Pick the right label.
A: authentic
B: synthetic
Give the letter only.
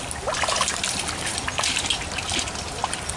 A